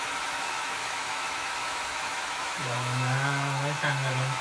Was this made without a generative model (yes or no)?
no